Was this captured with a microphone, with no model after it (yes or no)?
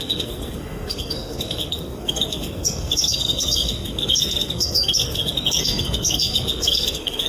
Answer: no